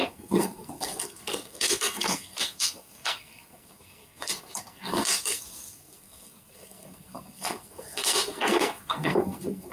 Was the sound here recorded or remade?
remade